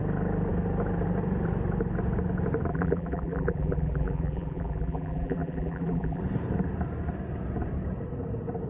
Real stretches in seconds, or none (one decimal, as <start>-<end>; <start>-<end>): 0.0-2.7; 6.2-8.7

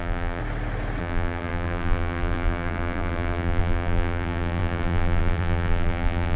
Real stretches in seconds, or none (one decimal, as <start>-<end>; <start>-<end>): 0.4-1.0